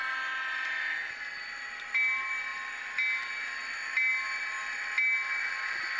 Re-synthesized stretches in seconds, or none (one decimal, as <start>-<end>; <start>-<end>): none